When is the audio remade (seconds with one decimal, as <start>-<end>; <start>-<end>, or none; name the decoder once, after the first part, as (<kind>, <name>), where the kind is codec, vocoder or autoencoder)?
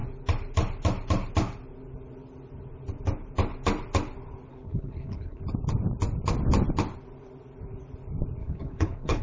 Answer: 4.5-5.4 (codec, HILCodec); 8.4-9.2